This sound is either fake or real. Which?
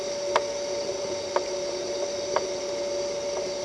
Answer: real